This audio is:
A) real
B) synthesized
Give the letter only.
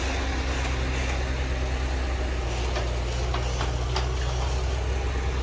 A